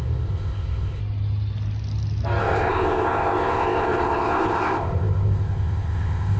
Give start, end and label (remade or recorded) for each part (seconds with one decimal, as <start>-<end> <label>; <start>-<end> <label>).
0.0-1.0 remade; 1.0-2.4 recorded; 2.4-6.4 remade